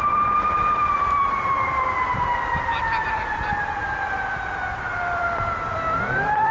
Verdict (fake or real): fake